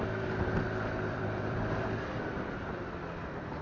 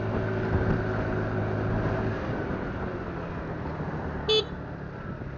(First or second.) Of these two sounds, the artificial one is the first